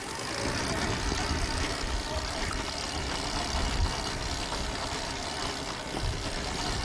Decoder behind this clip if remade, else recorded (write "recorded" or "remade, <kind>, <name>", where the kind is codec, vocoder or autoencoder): recorded